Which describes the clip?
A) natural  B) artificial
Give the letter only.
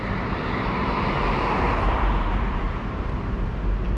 B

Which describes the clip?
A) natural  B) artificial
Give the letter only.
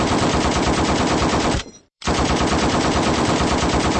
B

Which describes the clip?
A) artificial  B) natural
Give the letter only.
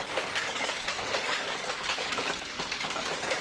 A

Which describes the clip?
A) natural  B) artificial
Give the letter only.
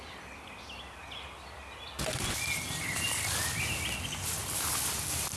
A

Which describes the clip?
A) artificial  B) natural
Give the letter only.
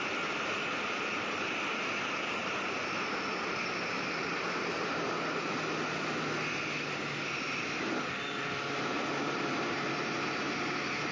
B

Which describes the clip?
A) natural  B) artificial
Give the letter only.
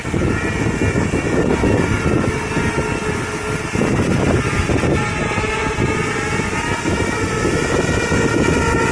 A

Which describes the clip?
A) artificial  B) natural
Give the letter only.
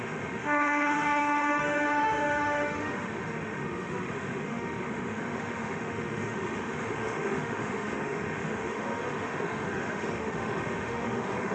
A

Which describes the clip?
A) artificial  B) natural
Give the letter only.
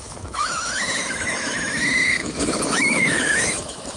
A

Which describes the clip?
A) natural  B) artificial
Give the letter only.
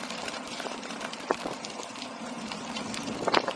B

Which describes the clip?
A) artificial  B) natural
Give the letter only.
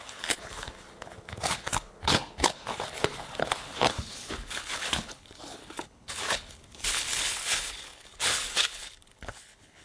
A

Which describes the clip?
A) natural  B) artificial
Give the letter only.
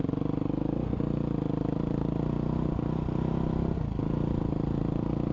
A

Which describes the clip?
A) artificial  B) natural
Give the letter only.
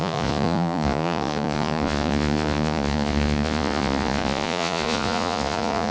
A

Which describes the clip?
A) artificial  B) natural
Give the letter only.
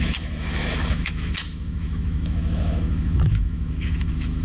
A